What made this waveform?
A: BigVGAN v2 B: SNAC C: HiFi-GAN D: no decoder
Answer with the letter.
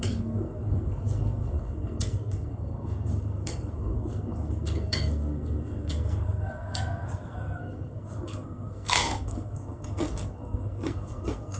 B